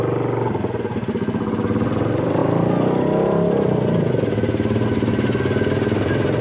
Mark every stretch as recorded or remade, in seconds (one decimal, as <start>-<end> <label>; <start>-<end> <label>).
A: 0.0-6.4 recorded